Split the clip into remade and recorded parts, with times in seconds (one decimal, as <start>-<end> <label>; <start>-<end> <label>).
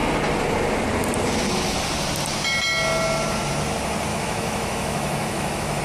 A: 0.0-4.1 recorded; 4.1-5.8 remade